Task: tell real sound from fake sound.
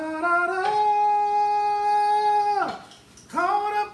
real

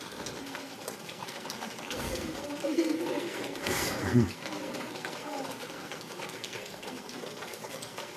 fake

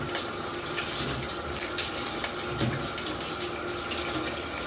real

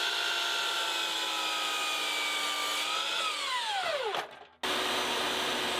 real